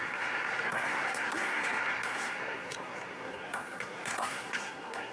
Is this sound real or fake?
fake